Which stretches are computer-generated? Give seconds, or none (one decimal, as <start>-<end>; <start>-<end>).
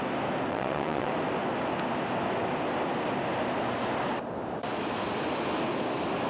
0.5-1.1